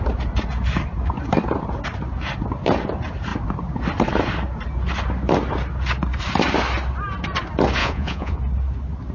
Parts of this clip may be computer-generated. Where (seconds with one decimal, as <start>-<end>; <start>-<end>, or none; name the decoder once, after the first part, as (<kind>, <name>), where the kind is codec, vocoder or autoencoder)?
7.8-8.4 (vocoder, Vocos)

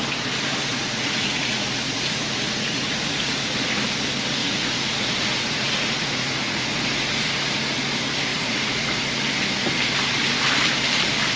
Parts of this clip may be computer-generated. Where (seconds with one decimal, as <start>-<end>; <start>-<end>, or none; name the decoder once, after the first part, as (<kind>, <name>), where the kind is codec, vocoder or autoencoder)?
0.7-3.8 (vocoder, Vocos); 4.4-7.3; 8.3-9.0

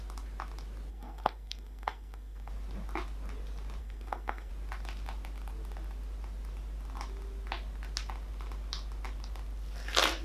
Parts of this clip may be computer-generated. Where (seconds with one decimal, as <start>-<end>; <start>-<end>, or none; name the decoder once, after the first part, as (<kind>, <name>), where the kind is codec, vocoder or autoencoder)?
0.9-2.5 (codec, SNAC); 3.8-4.5

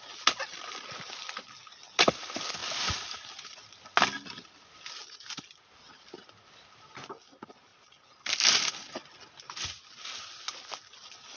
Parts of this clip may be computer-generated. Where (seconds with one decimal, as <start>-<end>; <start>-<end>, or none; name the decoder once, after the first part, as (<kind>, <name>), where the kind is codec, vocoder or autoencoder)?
none